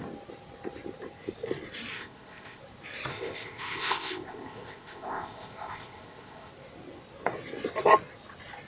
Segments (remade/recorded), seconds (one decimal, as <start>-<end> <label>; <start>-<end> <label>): 0.0-1.9 recorded; 1.9-2.6 remade; 2.6-3.1 recorded; 3.1-6.5 remade; 6.5-8.7 recorded